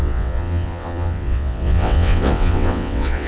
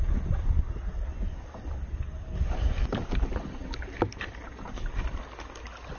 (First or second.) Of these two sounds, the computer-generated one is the first